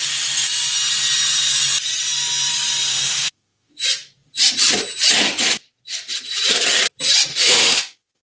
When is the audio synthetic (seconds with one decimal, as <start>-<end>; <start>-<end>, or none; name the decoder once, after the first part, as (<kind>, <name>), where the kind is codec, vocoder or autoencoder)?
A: 2.9-3.8 (autoencoder, DAC-VAE); 7.3-8.2